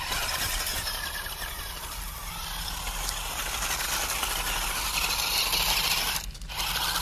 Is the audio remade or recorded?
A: recorded